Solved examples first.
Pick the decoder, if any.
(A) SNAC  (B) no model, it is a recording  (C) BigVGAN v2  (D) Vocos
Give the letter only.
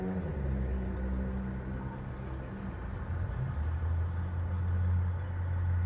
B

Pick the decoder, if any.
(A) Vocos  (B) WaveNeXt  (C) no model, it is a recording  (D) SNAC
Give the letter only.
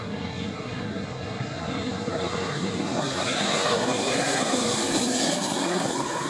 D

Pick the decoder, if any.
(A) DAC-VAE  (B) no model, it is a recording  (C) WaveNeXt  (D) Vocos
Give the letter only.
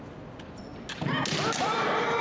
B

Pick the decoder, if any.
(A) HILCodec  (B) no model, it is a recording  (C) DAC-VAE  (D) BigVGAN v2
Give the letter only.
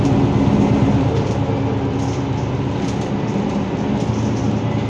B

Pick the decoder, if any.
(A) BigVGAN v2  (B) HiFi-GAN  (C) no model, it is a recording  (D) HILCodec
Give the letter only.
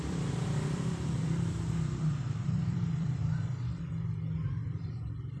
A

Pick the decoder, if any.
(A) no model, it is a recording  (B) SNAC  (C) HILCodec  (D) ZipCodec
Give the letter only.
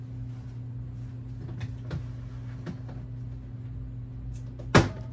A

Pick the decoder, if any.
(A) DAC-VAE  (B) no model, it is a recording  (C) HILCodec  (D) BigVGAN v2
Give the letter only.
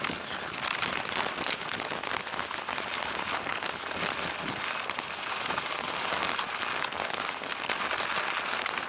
B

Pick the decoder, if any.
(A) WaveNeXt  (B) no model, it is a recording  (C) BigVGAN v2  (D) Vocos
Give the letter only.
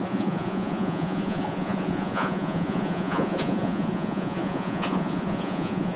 D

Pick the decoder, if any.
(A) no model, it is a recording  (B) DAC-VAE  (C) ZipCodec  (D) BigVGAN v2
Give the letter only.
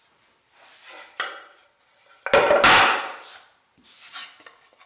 A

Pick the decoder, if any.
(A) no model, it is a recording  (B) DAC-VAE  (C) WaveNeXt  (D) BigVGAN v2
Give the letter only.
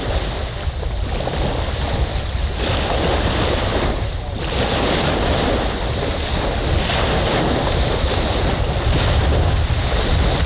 A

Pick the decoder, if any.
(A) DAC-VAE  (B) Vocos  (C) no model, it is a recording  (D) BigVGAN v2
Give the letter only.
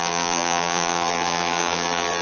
D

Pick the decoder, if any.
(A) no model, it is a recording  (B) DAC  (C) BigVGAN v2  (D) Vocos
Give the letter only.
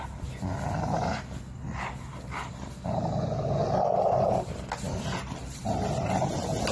A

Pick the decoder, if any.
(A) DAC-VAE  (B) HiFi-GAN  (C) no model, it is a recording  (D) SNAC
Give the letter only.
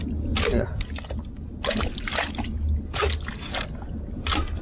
C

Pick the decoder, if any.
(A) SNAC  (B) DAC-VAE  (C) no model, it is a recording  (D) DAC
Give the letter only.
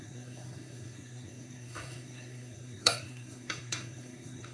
A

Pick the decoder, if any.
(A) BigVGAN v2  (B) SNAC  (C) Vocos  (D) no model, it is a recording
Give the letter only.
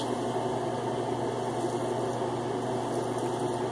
D